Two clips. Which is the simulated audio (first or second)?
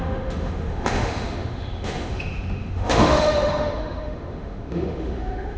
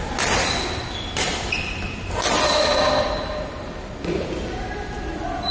first